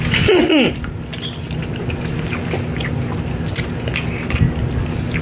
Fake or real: real